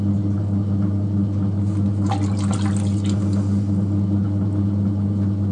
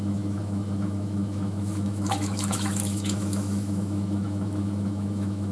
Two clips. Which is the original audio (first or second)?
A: first